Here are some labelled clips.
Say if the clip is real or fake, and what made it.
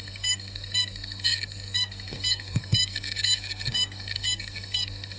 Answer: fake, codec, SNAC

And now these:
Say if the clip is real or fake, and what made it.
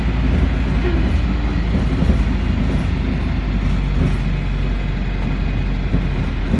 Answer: real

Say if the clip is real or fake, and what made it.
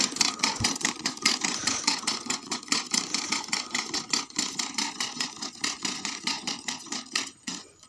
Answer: fake, vocoder, Vocos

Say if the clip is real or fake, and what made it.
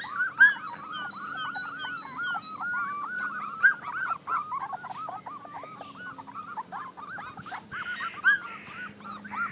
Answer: real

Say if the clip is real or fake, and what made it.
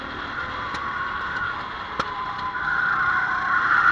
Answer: real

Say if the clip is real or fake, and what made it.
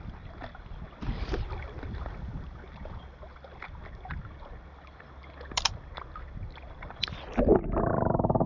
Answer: real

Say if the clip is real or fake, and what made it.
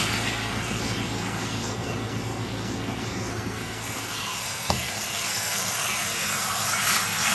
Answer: fake, codec, SNAC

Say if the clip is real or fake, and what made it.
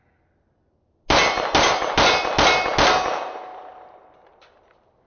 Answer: real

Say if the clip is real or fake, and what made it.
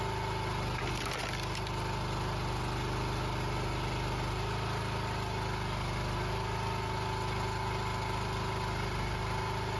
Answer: real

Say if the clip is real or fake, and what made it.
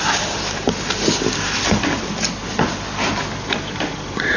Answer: real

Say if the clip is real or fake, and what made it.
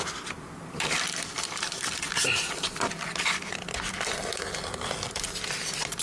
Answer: fake, vocoder, BigVGAN v2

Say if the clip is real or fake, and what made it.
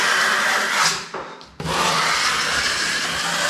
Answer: real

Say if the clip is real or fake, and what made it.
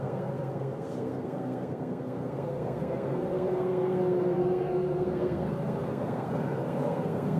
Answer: fake, codec, SNAC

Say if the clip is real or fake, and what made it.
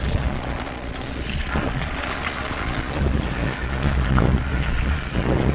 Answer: fake, vocoder, Vocos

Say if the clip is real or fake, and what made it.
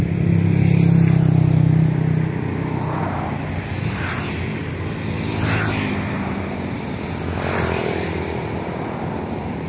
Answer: real